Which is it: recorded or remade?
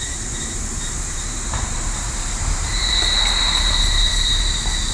remade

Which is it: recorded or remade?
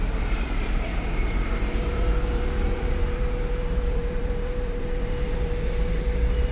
remade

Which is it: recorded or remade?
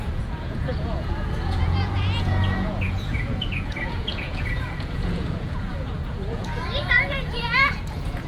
remade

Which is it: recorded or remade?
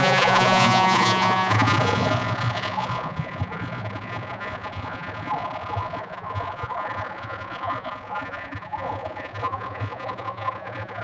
remade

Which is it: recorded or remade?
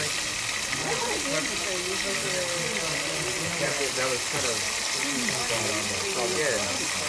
recorded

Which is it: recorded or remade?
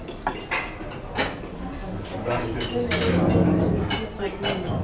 recorded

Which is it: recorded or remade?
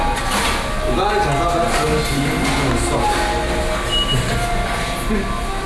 recorded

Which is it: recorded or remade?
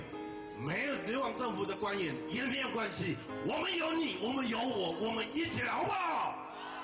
recorded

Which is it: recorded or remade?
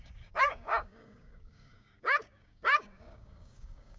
remade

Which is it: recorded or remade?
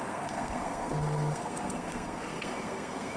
remade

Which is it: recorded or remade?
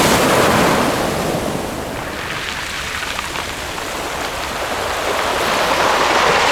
recorded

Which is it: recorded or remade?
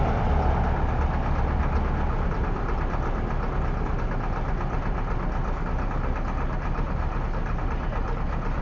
recorded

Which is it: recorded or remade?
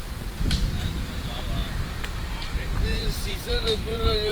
remade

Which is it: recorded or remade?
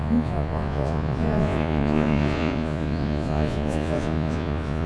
remade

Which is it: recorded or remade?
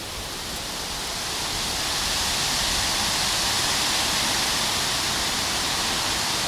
recorded